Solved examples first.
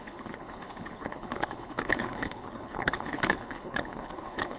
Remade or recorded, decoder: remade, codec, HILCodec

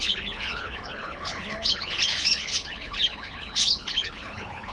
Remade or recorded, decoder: remade, codec, HILCodec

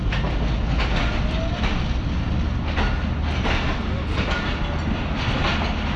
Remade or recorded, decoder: recorded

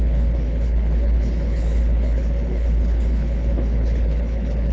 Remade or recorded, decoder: remade, codec, HILCodec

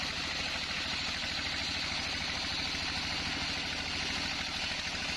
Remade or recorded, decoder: recorded